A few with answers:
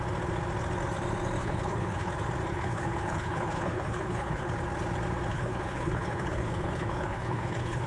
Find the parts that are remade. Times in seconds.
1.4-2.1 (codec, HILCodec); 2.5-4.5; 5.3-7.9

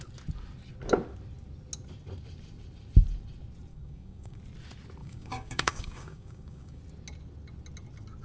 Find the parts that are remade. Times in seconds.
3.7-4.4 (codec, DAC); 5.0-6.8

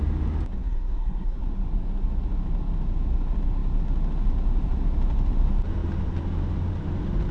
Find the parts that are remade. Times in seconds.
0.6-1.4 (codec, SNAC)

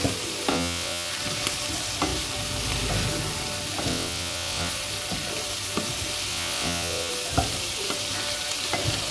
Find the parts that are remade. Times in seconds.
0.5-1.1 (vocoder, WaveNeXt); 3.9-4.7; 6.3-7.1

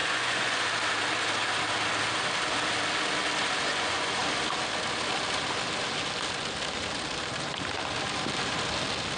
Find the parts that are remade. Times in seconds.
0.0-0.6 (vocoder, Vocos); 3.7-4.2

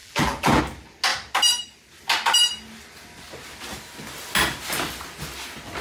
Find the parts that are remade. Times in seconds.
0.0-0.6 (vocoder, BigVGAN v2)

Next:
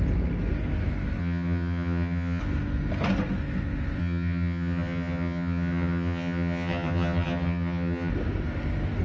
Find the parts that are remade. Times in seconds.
1.2-2.4 (vocoder, HiFi-GAN); 4.0-8.1